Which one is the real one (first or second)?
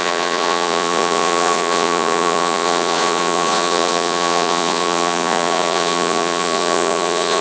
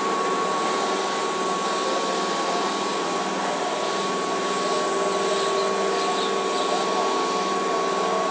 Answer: second